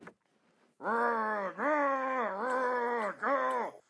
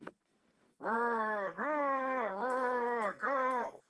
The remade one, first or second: second